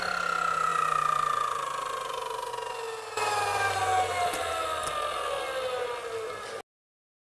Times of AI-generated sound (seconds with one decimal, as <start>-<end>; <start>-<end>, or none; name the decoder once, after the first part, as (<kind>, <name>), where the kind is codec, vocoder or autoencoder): 0.7-2.5 (vocoder, BigVGAN v2)